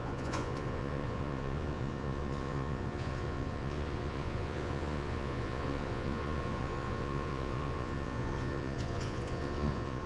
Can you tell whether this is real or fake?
fake